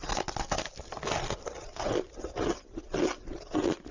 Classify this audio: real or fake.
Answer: real